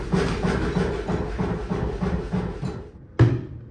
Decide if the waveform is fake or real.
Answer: real